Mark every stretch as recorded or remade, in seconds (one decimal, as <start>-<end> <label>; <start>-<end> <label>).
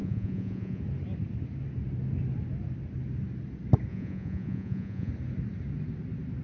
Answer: 0.0-0.8 remade; 0.8-3.9 recorded; 3.9-5.1 remade; 5.1-6.4 recorded